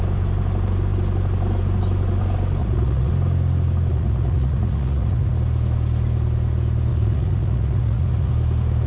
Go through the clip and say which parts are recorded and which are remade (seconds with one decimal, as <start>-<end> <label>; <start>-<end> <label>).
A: 0.0-2.6 recorded; 2.6-3.1 remade; 3.1-3.9 recorded; 3.9-5.3 remade; 5.3-6.9 recorded; 6.9-8.3 remade; 8.3-8.9 recorded